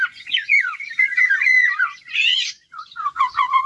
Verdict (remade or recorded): remade